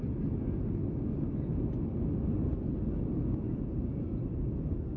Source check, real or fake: real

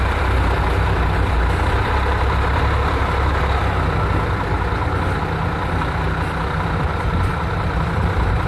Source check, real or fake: fake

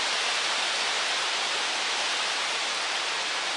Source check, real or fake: fake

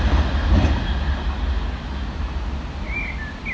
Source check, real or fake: real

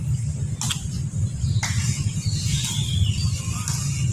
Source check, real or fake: real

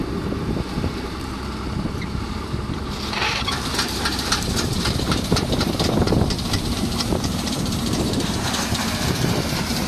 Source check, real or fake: fake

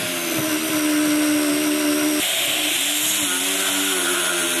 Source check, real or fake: real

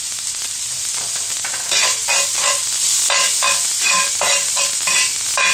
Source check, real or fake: real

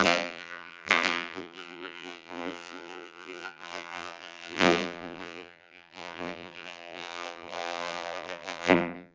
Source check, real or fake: fake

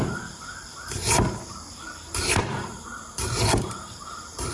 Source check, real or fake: fake